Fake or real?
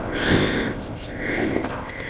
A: fake